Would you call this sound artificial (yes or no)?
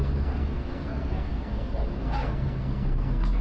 yes